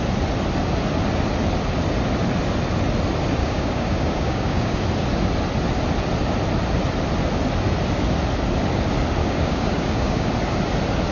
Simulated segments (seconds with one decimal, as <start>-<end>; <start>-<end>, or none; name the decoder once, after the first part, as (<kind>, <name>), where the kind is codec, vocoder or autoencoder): 3.4-4.8 (codec, DAC); 9.2-10.3